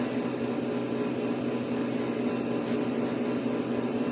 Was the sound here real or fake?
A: real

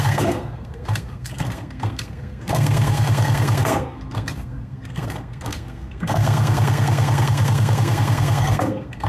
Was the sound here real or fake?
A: fake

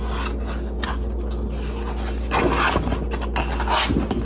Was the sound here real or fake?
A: real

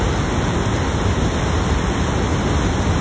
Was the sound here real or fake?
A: real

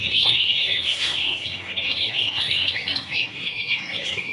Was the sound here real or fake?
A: fake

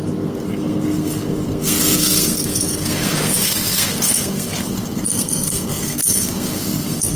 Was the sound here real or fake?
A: fake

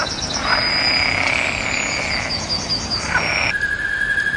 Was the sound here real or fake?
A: real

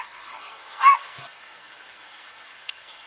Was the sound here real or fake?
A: fake